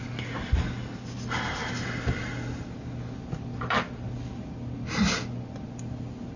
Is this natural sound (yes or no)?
yes